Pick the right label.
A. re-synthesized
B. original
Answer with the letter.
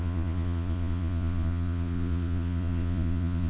A